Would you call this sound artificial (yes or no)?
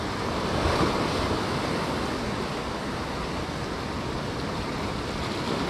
no